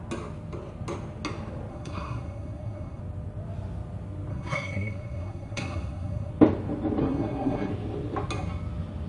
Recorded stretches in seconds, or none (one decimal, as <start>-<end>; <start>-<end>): 0.0-1.7; 3.0-4.3; 6.3-7.0; 7.7-9.1